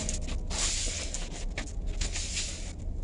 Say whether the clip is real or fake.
real